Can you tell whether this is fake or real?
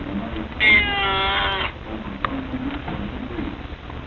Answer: real